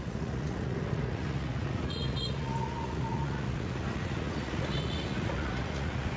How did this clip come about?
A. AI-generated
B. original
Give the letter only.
A